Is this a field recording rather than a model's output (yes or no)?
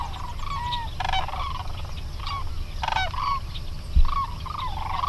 yes